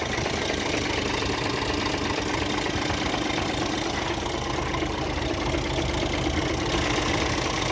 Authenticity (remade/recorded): recorded